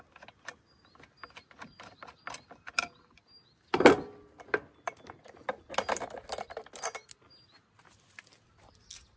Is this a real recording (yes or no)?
yes